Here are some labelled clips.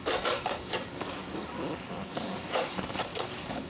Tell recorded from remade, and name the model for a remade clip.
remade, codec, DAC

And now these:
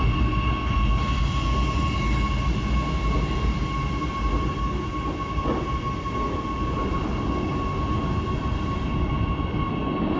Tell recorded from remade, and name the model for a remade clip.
recorded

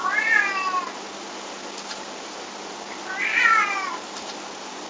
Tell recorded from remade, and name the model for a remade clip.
recorded